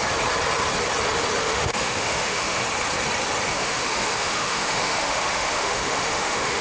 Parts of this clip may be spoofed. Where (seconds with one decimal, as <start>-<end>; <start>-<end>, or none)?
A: 1.4-2.6; 3.5-6.6